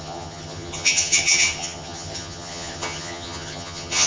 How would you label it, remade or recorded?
remade